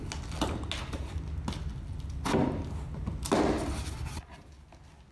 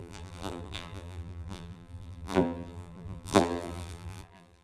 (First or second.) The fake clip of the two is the second